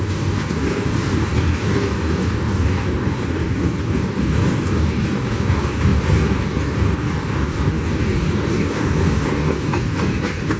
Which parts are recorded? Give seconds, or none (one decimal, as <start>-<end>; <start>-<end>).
none